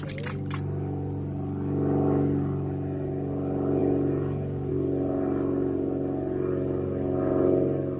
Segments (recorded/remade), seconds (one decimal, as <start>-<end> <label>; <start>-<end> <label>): 0.0-3.8 recorded; 3.8-4.7 remade; 4.7-8.0 recorded